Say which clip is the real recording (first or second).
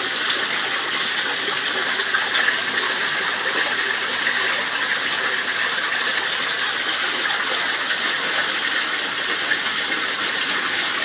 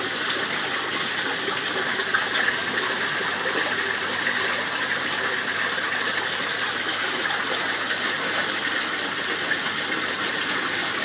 first